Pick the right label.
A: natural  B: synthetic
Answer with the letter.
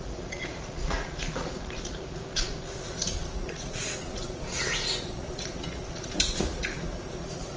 B